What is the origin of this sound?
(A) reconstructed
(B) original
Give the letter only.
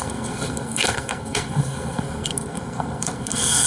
A